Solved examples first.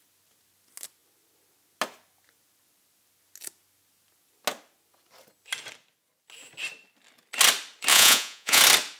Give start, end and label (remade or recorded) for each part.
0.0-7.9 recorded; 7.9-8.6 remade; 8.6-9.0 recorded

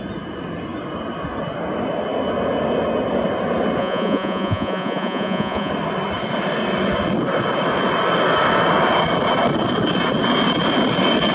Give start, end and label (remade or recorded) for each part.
0.0-3.8 recorded; 3.8-5.7 remade; 5.7-11.3 recorded

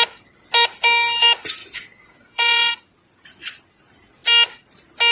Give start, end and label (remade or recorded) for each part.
0.0-1.6 recorded; 1.6-2.7 remade; 2.7-5.1 recorded

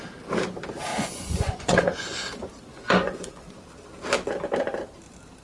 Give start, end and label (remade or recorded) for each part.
0.0-0.9 recorded; 0.9-2.3 remade; 2.3-2.7 recorded; 2.7-3.4 remade; 3.4-5.4 recorded

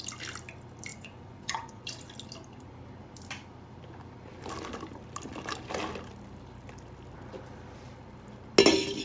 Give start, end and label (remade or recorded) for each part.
0.0-0.9 recorded; 0.9-1.8 remade; 1.8-9.0 recorded

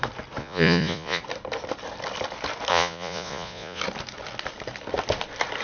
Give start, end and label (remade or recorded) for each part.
0.0-0.4 recorded; 0.4-1.2 remade; 1.2-2.7 recorded; 2.7-3.8 remade; 3.8-5.6 recorded

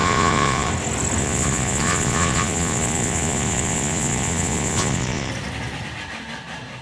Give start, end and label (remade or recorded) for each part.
0.0-0.7 remade; 0.7-1.2 recorded; 1.2-5.3 remade; 5.3-6.8 recorded

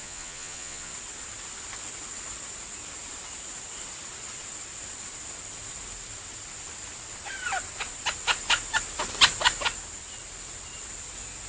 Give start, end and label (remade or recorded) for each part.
0.0-0.9 remade; 0.9-11.5 recorded